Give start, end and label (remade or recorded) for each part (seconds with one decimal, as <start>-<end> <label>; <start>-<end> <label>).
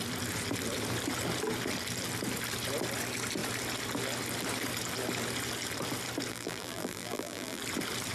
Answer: 0.0-6.3 recorded; 6.3-7.6 remade; 7.6-8.1 recorded